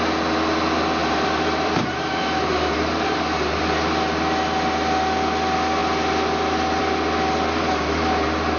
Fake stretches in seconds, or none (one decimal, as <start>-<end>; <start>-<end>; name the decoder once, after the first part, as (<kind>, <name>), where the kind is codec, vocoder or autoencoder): 1.0-3.6 (vocoder, BigVGAN v2)